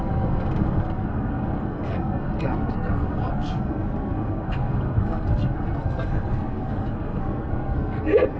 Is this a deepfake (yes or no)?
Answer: yes